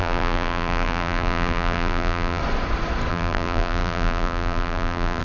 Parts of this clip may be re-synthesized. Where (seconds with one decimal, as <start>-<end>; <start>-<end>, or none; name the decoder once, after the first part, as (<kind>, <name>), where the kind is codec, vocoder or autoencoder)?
0.0-2.4 (vocoder, BigVGAN v2); 3.1-5.2